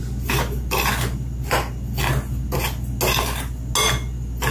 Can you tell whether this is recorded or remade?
recorded